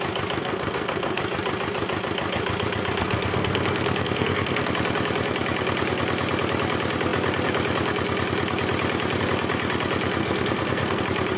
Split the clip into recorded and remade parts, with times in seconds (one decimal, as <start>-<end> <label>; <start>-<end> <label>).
0.0-0.4 recorded; 0.4-1.2 remade; 1.2-3.0 recorded; 3.0-4.7 remade; 4.7-10.2 recorded; 10.2-11.0 remade; 11.0-11.4 recorded